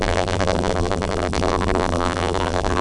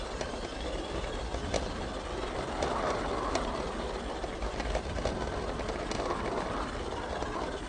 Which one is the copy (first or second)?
first